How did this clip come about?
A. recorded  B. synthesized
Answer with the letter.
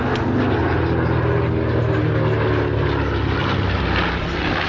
A